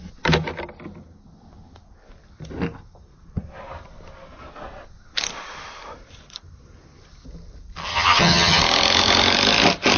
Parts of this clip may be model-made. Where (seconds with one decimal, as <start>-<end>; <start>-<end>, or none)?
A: 7.9-8.6